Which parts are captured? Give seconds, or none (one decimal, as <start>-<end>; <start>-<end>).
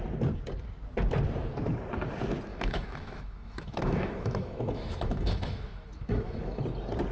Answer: 0.0-2.5; 6.6-7.1